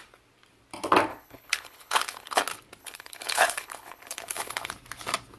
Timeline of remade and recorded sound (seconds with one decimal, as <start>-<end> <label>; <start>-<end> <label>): 0.0-1.1 recorded; 1.1-2.4 remade; 2.4-2.8 recorded; 2.8-4.7 remade; 4.7-5.4 recorded